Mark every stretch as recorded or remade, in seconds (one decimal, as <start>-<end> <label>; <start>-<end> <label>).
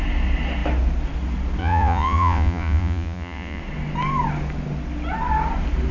0.0-1.6 recorded; 1.6-3.6 remade; 3.6-5.9 recorded